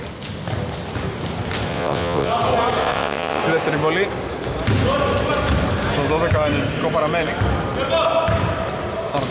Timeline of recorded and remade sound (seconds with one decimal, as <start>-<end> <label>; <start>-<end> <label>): 0.0-1.7 recorded; 1.7-2.3 remade; 2.3-2.8 recorded; 2.8-3.4 remade; 3.4-9.3 recorded